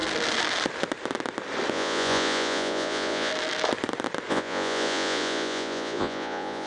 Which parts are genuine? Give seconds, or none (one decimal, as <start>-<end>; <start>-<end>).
0.0-1.7; 3.3-4.3